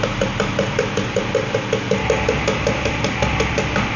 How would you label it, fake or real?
real